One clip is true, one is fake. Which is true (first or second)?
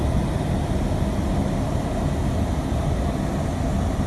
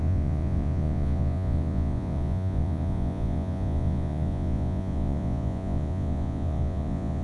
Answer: first